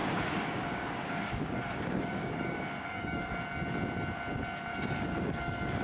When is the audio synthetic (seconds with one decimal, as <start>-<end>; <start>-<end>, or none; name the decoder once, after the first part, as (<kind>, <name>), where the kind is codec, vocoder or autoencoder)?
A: 0.0-3.4 (codec, DAC); 4.7-5.8